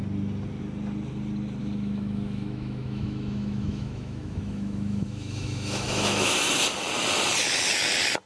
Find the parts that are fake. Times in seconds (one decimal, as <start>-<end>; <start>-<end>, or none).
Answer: 1.6-6.3